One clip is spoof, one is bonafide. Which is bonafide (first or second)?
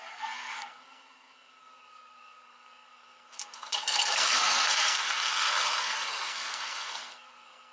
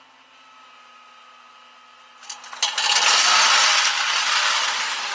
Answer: second